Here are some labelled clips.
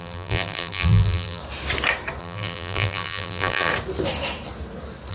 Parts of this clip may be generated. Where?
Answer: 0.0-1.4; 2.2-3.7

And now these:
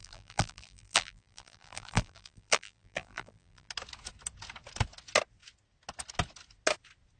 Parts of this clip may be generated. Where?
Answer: 0.0-3.7

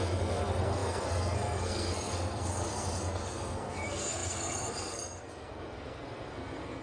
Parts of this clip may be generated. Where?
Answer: 0.0-6.8